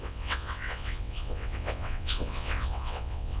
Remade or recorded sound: remade